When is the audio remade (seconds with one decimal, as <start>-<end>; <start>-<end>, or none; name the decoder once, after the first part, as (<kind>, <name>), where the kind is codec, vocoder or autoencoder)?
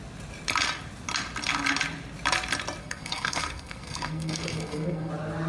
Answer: 2.8-5.1 (codec, SNAC)